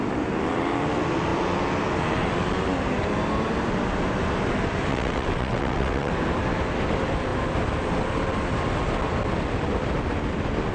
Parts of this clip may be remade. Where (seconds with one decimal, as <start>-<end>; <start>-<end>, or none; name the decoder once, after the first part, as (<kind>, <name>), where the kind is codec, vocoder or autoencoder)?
4.9-6.1 (vocoder, WaveNeXt)

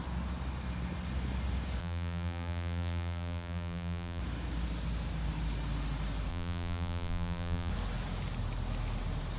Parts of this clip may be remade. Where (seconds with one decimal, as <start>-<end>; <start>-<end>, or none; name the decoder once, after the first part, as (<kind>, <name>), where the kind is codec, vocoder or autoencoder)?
1.8-4.2 (vocoder, BigVGAN v2); 6.3-7.7

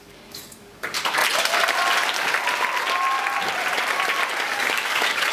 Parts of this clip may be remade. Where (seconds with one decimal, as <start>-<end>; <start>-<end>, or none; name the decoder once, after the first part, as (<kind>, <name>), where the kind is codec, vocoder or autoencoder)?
0.0-1.2 (codec, DAC); 4.4-5.3